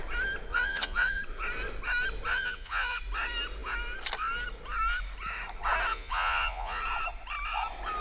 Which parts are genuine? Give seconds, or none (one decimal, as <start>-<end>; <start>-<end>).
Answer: 0.0-0.5; 1.2-2.3; 3.0-5.9; 6.8-8.0